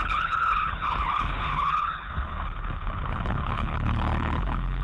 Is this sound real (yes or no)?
no